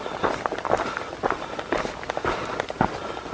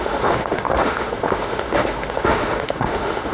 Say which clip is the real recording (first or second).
first